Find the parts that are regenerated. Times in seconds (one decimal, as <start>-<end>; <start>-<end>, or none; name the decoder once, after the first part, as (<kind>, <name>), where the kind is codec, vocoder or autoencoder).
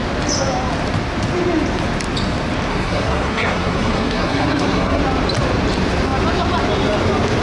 2.7-5.0 (codec, SNAC)